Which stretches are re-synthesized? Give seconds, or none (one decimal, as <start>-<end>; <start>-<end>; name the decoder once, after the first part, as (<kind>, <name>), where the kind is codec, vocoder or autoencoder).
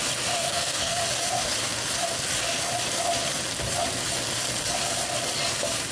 0.4-1.0 (codec, SNAC)